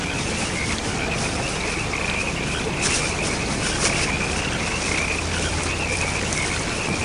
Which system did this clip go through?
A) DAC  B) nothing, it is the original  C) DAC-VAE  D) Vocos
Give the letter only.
B